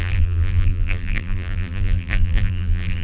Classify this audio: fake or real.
fake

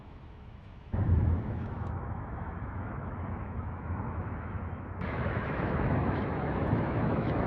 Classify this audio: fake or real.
fake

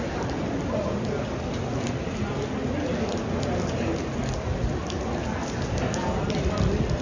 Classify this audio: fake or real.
real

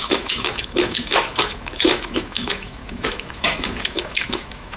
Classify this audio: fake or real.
fake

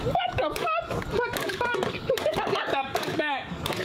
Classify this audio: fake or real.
fake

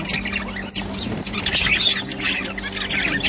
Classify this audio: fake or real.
real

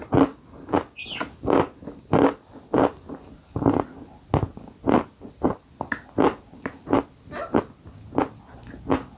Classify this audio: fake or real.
real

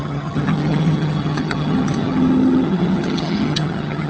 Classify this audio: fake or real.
fake